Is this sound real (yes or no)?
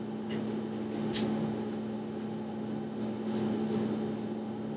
yes